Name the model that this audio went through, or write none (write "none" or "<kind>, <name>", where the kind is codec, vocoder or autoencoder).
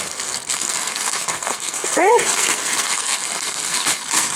codec, SNAC